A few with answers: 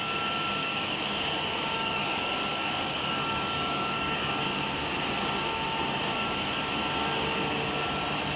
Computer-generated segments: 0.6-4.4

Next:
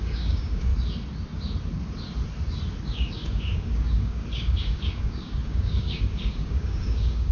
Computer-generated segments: 0.0-0.7; 2.8-7.3

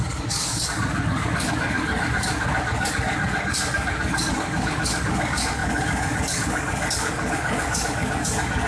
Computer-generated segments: 0.0-8.7

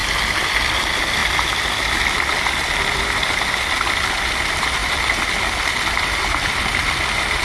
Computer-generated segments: none

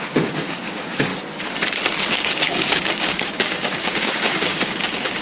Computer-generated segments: 0.0-1.1; 2.1-5.2

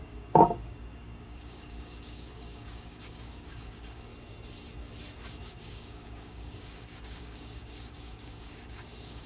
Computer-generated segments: 0.0-4.1; 5.3-9.3

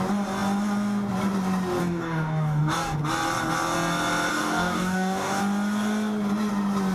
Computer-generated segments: 1.8-3.0; 4.3-5.4

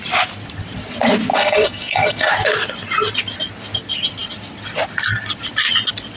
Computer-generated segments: 1.3-2.3